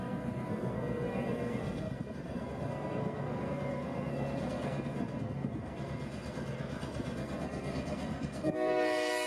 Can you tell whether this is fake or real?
fake